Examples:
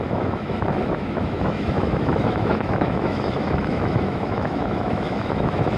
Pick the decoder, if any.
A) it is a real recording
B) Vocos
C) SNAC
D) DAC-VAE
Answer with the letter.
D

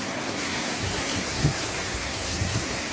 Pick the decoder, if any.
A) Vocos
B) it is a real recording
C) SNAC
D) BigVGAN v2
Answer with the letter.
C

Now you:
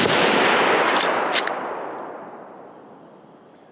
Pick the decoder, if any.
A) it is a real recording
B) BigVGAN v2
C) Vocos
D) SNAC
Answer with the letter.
A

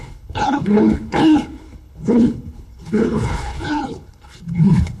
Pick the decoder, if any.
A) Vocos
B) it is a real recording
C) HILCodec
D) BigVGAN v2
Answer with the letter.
C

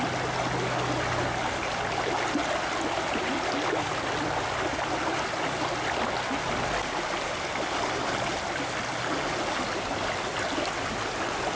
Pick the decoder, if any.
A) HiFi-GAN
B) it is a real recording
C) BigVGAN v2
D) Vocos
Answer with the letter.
B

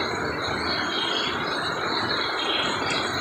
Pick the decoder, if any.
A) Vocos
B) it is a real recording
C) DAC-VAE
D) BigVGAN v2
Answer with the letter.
B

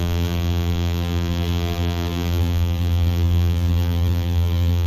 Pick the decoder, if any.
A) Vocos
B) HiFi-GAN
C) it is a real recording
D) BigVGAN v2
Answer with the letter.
D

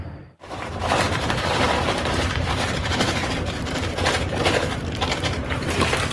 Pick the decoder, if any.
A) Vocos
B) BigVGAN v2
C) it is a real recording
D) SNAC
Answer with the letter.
B